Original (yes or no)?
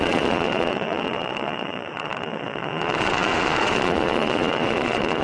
no